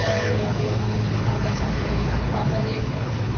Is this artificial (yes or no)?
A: yes